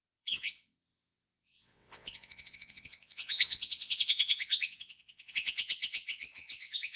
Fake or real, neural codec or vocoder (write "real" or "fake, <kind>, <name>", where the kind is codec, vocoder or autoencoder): fake, vocoder, WaveNeXt